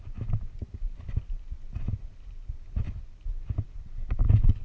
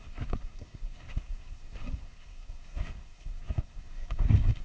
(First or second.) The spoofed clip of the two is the second